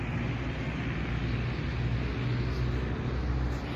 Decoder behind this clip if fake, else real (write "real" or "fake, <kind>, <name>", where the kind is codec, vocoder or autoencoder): real